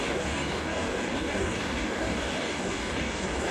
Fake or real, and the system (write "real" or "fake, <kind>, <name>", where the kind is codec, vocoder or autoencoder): fake, codec, DAC